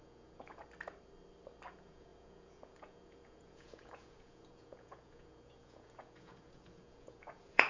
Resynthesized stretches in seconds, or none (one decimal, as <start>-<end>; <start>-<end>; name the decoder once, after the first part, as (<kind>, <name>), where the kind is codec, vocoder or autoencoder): 0.0-0.6 (vocoder, Vocos); 1.7-7.7

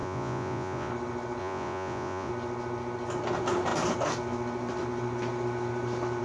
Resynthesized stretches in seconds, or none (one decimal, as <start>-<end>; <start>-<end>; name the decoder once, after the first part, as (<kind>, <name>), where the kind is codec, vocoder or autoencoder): 0.0-0.9 (vocoder, Vocos); 1.4-2.3

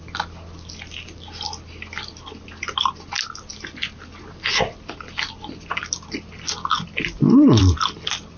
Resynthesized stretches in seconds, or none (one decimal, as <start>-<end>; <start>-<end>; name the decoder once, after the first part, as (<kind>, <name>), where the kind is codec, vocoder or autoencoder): none

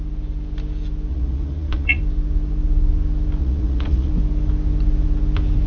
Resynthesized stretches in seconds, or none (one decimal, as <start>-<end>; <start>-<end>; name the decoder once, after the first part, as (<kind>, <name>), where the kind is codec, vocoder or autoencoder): 1.1-2.0 (vocoder, Vocos); 3.4-4.1

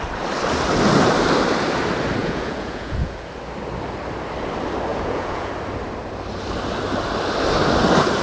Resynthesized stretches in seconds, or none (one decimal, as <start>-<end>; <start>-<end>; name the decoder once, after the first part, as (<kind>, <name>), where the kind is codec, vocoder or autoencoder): 2.2-3.3 (vocoder, Vocos); 4.9-5.5